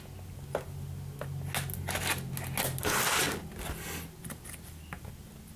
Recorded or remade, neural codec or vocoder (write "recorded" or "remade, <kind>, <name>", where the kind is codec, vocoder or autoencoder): recorded